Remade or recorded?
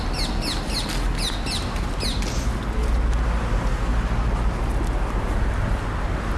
recorded